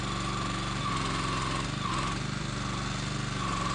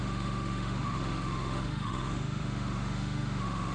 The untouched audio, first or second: first